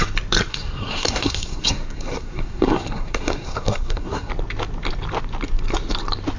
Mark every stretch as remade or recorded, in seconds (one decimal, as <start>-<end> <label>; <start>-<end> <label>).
0.0-0.5 recorded; 0.5-4.3 remade; 4.3-6.4 recorded